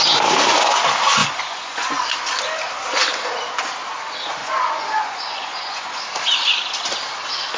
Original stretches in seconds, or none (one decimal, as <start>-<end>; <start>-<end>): 0.0-1.2; 2.0-4.4; 6.0-7.6